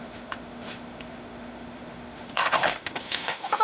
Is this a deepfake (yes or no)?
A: yes